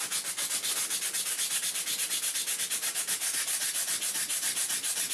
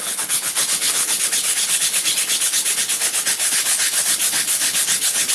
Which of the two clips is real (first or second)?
first